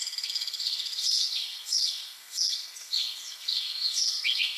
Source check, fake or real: fake